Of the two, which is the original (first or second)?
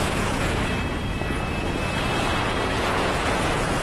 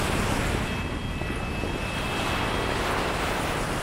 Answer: second